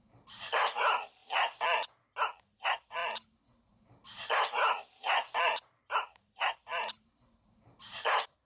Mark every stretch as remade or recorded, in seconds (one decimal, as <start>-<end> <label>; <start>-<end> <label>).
0.0-1.2 remade; 1.2-2.4 recorded; 2.4-3.0 remade; 3.0-3.6 recorded; 3.6-8.5 remade